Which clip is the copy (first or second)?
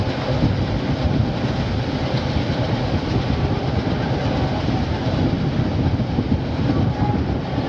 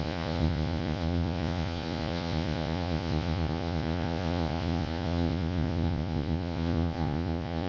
second